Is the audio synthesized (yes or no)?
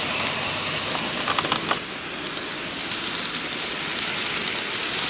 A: no